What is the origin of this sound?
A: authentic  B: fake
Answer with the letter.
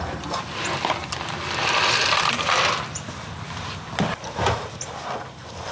A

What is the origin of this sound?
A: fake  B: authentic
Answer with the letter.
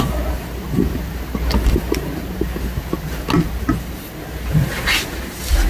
B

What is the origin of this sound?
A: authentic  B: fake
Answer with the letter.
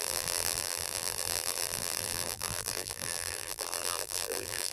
B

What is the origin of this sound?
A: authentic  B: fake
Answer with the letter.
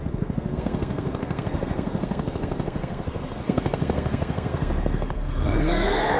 B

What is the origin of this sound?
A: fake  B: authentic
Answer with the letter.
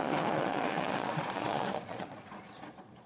A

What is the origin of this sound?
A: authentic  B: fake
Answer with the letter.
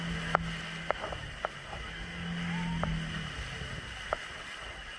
A